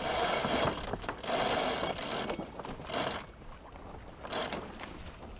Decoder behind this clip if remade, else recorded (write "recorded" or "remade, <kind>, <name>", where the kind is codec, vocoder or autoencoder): recorded